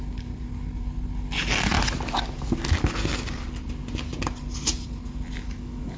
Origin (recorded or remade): recorded